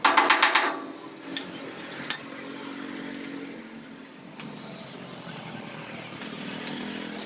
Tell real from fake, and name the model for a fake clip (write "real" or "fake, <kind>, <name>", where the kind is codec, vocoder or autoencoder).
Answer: real